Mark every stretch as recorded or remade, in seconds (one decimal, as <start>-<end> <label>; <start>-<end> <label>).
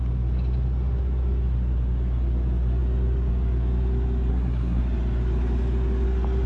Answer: 0.0-4.3 recorded; 4.3-4.8 remade; 4.8-6.5 recorded